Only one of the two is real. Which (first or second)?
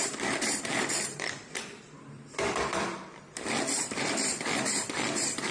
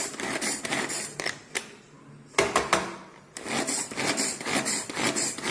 second